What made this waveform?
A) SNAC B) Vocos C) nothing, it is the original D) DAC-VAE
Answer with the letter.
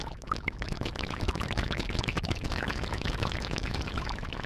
D